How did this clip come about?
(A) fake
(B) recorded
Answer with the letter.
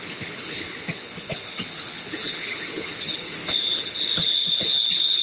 A